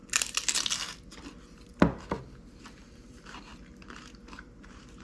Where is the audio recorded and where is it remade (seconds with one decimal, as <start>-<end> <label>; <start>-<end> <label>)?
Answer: 0.0-2.4 recorded; 2.4-3.5 remade; 3.5-4.3 recorded; 4.3-5.0 remade